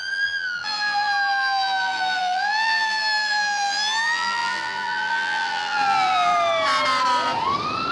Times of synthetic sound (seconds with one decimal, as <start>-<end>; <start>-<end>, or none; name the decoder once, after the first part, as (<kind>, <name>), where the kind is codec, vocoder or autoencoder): 0.0-6.3 (vocoder, BigVGAN v2)